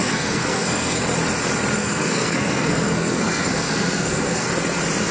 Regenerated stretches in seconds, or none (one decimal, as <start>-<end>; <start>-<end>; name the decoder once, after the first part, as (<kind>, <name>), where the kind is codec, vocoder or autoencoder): 0.0-1.0 (codec, SNAC); 1.8-4.5